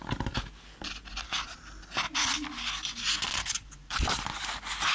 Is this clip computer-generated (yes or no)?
no